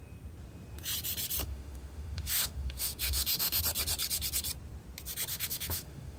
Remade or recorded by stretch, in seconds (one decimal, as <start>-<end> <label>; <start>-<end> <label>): 0.0-1.4 recorded; 1.4-3.6 remade; 3.6-5.3 recorded; 5.3-6.2 remade